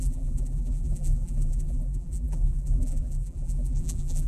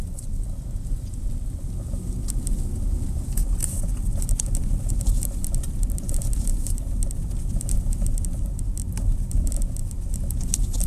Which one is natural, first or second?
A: second